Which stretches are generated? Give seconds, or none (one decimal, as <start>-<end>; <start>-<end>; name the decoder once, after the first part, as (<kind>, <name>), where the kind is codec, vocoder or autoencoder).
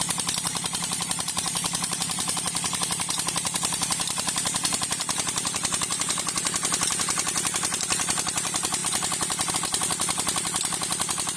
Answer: 0.5-2.8 (vocoder, BigVGAN v2)